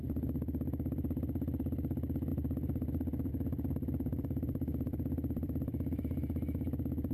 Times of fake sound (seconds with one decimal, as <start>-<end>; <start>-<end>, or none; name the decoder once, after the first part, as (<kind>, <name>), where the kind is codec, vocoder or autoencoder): 2.3-3.3 (vocoder, BigVGAN v2); 4.1-6.0